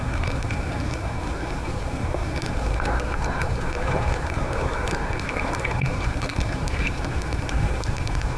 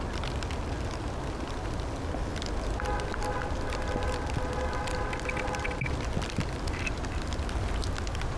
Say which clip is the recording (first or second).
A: second